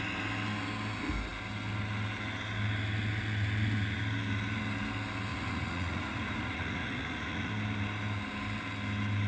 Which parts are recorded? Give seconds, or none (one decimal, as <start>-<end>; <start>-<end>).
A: 0.0-5.3; 7.5-9.3